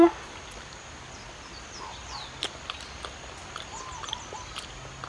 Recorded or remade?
recorded